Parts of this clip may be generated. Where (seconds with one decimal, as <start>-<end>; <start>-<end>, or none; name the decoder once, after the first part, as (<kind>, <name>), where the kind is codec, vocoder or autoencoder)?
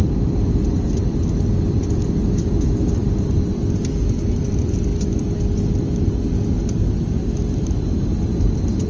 none